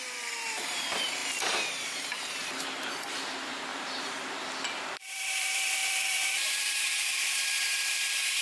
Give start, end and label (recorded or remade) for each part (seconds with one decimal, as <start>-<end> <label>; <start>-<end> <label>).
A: 0.0-8.4 remade